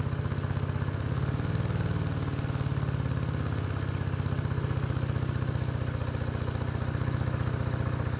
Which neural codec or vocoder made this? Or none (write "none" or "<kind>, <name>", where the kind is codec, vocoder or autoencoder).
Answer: none